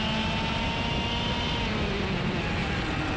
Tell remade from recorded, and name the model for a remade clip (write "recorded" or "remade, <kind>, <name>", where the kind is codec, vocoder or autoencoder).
recorded